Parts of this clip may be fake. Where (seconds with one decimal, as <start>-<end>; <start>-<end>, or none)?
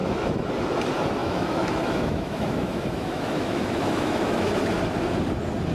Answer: 0.0-0.5; 1.2-4.6